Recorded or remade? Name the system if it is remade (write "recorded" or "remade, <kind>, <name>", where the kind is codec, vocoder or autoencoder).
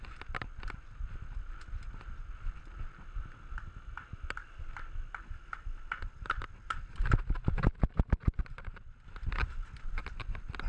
recorded